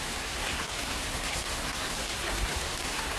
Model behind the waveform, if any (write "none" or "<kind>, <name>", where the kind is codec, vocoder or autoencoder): codec, SNAC